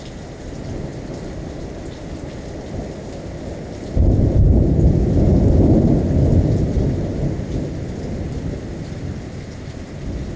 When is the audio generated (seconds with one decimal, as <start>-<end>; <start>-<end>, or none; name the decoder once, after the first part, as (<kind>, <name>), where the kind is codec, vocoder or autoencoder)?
none